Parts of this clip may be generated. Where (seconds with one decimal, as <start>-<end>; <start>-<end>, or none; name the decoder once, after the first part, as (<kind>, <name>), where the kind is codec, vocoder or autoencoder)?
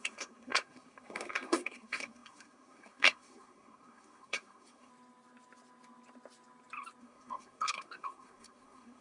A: 0.0-4.9 (codec, SNAC); 7.0-9.0